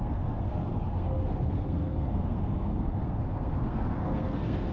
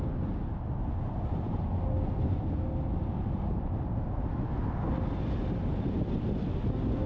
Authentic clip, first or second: second